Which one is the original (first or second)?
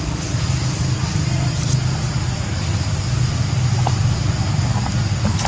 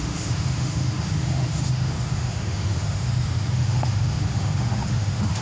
first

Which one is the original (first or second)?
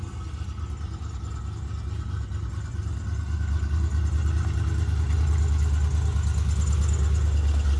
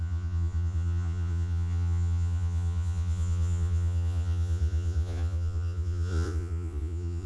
first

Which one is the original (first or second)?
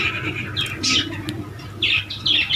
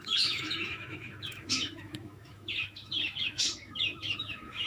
first